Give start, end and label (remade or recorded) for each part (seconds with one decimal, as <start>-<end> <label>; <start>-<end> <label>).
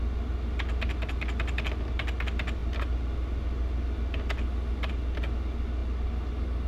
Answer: 0.0-6.7 recorded